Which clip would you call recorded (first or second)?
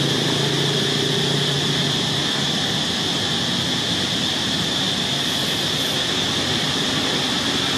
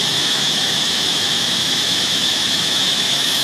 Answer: first